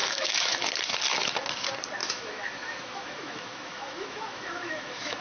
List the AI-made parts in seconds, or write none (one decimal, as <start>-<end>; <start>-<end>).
0.0-0.7; 2.0-5.2